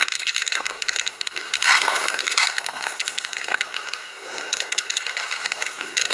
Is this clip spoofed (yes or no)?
yes